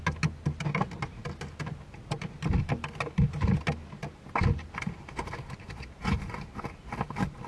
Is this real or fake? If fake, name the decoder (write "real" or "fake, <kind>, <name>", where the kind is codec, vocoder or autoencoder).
real